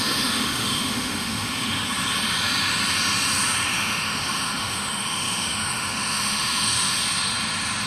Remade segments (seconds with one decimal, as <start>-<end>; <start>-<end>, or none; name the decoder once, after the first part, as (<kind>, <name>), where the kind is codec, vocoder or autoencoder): 0.0-1.8 (autoencoder, DAC-VAE); 3.7-7.0